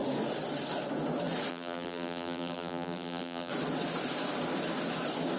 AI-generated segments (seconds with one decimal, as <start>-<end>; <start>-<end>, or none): 1.5-3.5

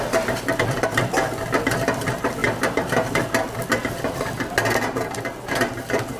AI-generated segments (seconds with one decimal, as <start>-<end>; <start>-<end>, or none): none

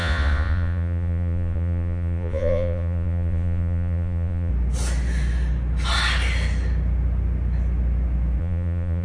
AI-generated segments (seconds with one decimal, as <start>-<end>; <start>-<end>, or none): 0.0-4.5; 8.4-9.0

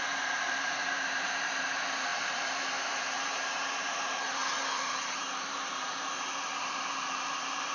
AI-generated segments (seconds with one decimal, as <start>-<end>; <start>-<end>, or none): 0.0-7.7

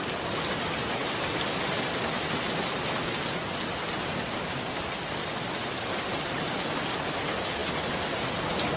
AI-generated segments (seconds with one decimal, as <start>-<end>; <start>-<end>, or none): none

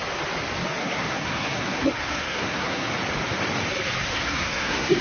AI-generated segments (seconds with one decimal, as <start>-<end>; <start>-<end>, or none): 0.8-2.9; 4.1-5.0

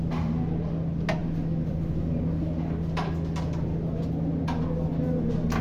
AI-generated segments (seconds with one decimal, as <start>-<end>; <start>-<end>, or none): none